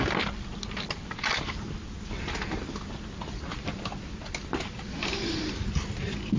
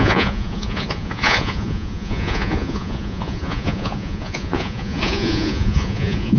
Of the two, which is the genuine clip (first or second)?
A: first